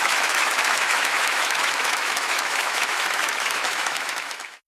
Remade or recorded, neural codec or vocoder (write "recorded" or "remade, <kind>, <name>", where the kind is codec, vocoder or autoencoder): remade, autoencoder, DAC-VAE